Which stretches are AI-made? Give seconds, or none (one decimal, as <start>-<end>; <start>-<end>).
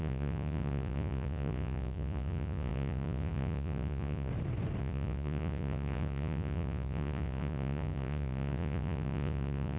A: 0.0-4.3; 4.8-9.8